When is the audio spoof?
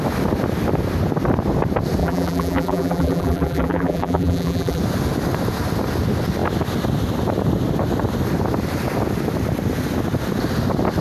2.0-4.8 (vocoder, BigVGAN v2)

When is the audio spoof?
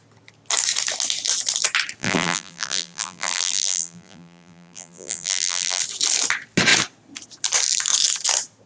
2.0-5.8 (vocoder, BigVGAN v2)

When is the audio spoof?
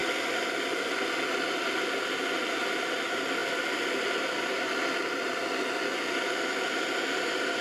none